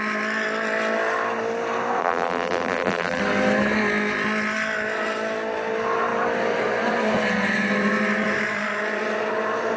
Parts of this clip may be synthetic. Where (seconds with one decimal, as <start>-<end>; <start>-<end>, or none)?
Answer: 2.0-3.2